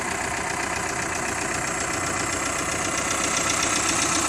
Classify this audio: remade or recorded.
recorded